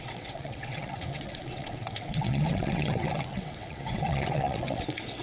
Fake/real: fake